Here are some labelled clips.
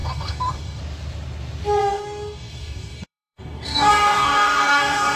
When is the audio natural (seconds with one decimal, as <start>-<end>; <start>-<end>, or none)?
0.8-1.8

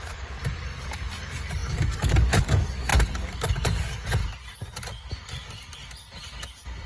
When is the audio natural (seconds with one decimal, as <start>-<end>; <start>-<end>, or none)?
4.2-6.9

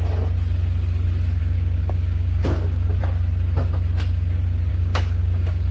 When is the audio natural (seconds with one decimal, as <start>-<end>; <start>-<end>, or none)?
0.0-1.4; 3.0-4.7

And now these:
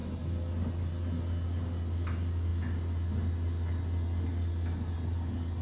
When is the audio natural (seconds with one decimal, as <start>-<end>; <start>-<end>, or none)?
0.0-5.6

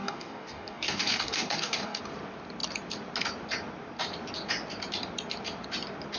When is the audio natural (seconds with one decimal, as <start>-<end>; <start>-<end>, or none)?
2.0-6.2

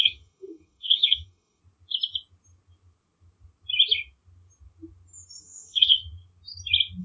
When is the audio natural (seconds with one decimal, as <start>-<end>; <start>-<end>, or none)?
1.6-5.4; 6.0-7.0

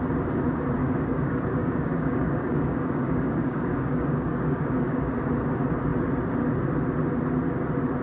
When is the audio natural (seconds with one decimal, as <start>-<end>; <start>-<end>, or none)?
0.0-0.8; 5.1-8.0